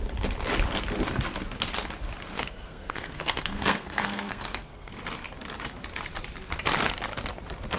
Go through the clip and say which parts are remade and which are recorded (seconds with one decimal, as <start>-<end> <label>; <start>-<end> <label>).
0.0-2.3 recorded; 2.3-4.9 remade; 4.9-7.8 recorded

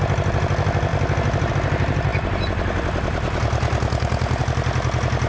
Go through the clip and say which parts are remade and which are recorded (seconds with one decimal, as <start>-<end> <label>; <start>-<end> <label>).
0.0-5.3 recorded

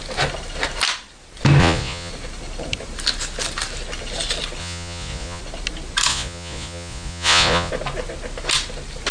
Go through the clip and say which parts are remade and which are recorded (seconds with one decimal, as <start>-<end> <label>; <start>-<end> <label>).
0.0-1.6 recorded; 1.6-2.1 remade; 2.1-4.6 recorded; 4.6-5.4 remade; 5.4-6.1 recorded; 6.1-7.7 remade; 7.7-9.1 recorded